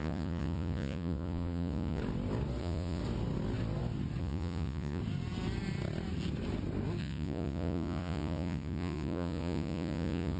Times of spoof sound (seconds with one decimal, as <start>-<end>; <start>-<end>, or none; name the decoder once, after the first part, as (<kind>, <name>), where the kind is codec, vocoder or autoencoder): 0.0-2.0 (vocoder, Vocos); 2.6-3.0; 4.2-5.0; 7.0-10.4